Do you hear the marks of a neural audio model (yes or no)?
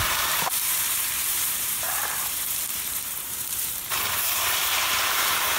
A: yes